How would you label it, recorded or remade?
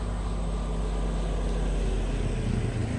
recorded